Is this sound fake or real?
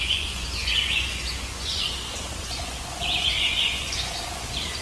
fake